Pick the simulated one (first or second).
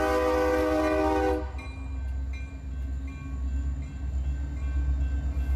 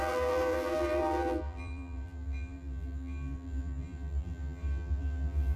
second